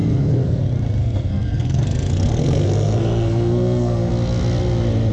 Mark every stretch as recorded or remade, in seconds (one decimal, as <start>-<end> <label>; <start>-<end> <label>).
0.0-0.6 remade; 0.6-1.0 recorded; 1.0-4.1 remade; 4.1-5.1 recorded